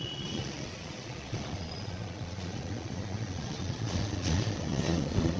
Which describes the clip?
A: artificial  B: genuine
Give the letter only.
A